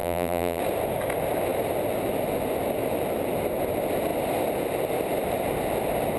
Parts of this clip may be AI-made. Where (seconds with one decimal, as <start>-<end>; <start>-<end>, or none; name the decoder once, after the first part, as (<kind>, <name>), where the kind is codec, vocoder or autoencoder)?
0.0-0.6 (vocoder, BigVGAN v2)